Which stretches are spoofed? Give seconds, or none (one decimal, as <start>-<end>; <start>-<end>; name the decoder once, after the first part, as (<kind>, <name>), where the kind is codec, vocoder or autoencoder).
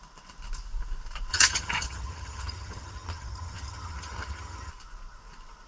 1.3-4.7 (vocoder, HiFi-GAN)